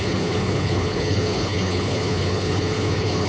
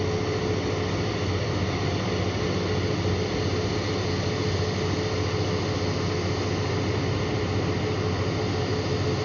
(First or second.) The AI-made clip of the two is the first